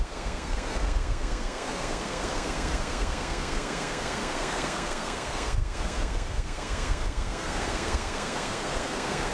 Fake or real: fake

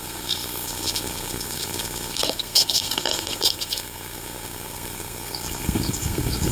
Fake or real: fake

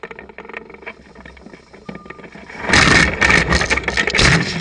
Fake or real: real